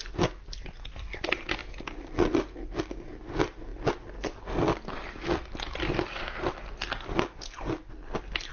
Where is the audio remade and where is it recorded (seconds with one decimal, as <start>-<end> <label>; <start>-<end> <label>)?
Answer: 0.0-8.5 recorded